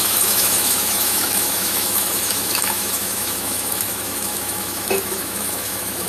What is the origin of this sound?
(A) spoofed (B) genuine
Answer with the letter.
A